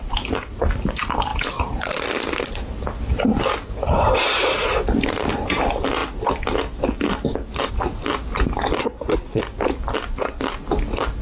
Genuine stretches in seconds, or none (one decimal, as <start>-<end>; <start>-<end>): 0.0-8.8; 9.4-11.2